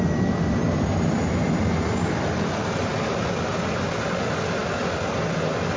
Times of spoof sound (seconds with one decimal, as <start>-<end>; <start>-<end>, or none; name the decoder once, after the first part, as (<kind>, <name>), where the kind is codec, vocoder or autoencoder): none